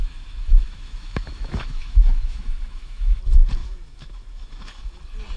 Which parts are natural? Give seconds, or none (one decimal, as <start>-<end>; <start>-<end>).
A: 3.2-3.6; 5.0-5.4